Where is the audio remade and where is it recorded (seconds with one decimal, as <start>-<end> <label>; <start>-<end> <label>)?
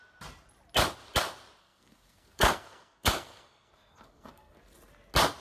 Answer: 0.0-1.6 recorded; 1.6-4.6 remade; 4.6-5.4 recorded